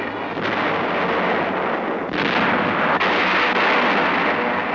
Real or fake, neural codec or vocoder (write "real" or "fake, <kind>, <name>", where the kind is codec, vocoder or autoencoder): real